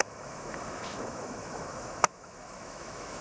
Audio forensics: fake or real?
fake